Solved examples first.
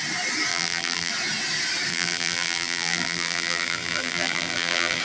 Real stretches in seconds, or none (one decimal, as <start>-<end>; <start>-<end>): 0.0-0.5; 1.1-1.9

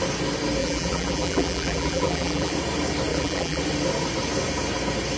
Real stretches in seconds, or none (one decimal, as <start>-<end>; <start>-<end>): 0.0-0.6; 2.5-3.1; 3.6-5.2

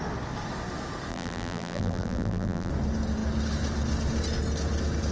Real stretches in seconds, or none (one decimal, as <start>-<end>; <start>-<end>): 0.0-1.1; 2.7-5.1

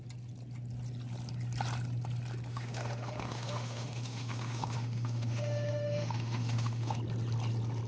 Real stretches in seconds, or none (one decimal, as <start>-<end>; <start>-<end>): 0.0-2.5; 7.0-7.9

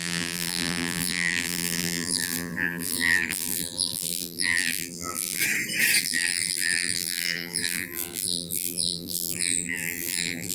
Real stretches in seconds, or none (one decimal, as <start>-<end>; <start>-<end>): 5.4-6.0

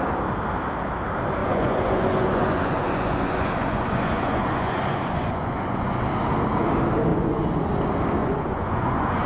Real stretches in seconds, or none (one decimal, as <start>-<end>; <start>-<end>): 0.0-1.4; 6.0-7.1; 7.6-8.2